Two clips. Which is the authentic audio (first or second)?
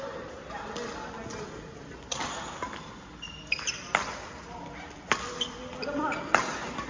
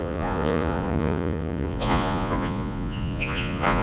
first